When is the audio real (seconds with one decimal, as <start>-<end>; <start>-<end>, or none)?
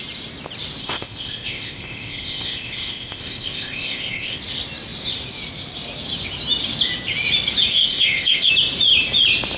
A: 0.0-0.8; 4.4-7.7; 8.5-9.6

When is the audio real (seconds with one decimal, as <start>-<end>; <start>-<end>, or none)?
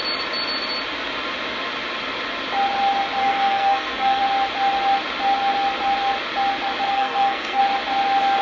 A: 0.0-3.2; 4.2-6.9; 7.6-8.4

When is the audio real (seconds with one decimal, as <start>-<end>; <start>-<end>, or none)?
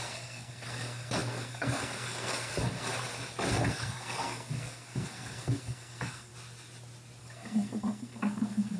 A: 2.9-3.5; 6.3-7.2